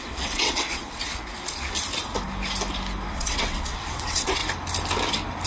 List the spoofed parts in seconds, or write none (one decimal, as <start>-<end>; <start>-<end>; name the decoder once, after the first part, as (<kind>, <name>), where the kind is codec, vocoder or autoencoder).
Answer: 0.0-1.0 (vocoder, WaveNeXt); 3.1-4.4

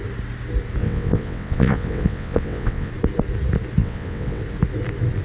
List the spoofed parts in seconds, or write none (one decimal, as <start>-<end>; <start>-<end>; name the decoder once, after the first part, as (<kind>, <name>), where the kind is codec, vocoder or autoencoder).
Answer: 0.8-2.9 (vocoder, WaveNeXt); 3.8-4.4

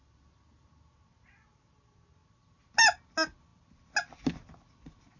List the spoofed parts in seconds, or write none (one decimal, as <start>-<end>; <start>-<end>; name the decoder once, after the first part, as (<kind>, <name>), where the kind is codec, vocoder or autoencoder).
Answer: none